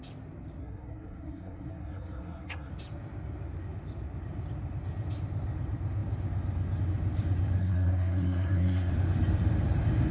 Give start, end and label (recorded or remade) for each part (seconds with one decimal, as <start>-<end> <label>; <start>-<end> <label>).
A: 0.0-0.6 recorded; 0.6-2.7 remade; 2.7-7.6 recorded; 7.6-8.9 remade; 8.9-10.1 recorded